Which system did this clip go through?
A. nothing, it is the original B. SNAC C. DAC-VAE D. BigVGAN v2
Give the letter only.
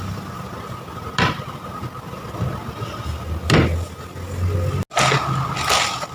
A